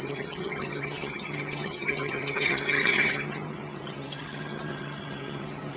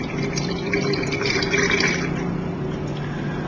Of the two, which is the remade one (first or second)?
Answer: first